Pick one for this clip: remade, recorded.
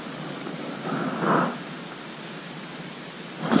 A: recorded